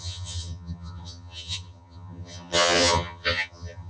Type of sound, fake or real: fake